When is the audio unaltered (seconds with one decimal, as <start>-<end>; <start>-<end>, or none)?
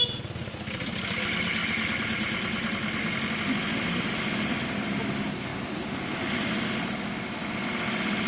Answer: 0.0-8.3